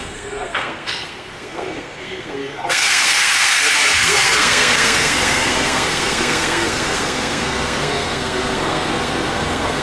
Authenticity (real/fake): fake